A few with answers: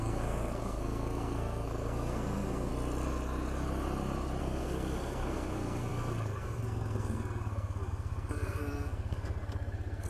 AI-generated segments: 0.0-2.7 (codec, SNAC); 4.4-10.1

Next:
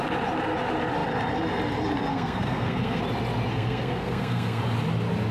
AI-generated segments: 2.1-3.0 (codec, SNAC); 3.5-4.6

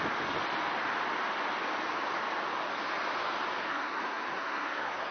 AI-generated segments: 3.7-5.1 (codec, SNAC)

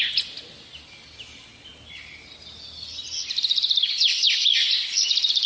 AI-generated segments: none

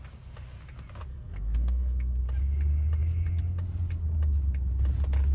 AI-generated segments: 1.1-2.2 (codec, SNAC)

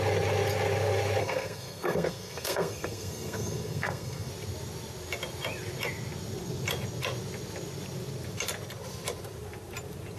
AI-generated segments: 1.2-4.3 (codec, SNAC)

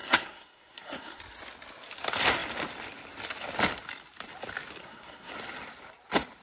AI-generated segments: 0.0-1.2 (codec, SNAC); 4.8-5.3